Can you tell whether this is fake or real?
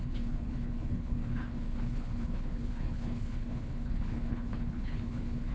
fake